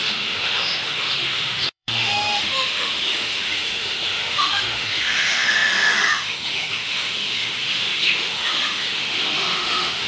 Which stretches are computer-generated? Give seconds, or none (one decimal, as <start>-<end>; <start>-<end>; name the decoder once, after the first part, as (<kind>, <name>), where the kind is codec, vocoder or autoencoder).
0.0-10.1 (autoencoder, DAC-VAE)